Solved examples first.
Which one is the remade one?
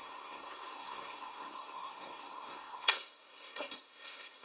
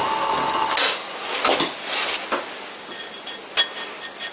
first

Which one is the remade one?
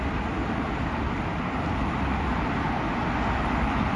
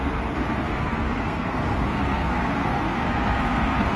second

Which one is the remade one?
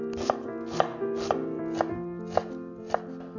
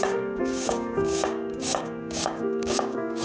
second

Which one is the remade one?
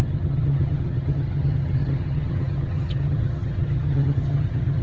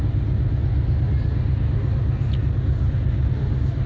first